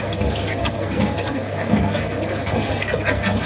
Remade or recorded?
remade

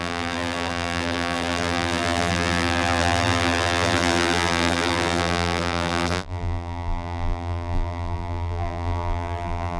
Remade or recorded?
remade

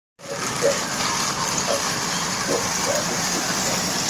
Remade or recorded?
recorded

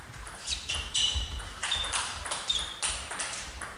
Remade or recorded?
remade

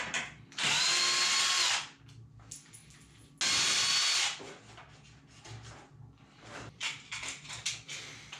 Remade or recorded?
recorded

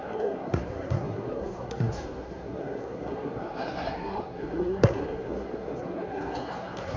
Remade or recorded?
remade